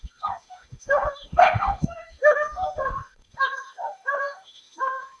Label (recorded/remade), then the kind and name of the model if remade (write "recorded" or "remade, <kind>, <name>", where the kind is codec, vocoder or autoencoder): remade, autoencoder, DAC-VAE